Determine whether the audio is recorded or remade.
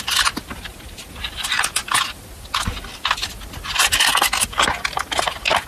recorded